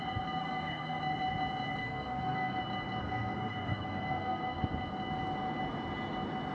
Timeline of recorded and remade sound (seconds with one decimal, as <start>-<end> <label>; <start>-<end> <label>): 0.0-0.4 recorded; 0.4-1.0 remade; 1.0-1.8 recorded; 1.8-2.6 remade; 2.6-3.0 recorded; 3.0-4.6 remade; 4.6-6.5 recorded